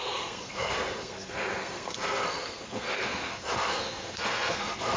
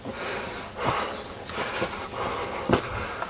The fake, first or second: first